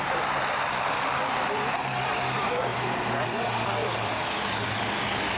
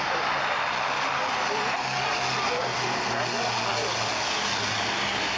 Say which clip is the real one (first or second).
second